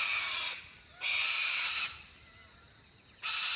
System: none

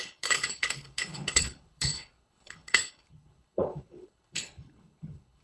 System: codec, HILCodec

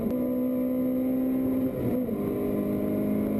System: none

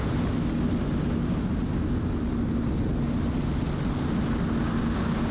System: none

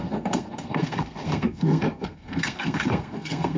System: codec, SNAC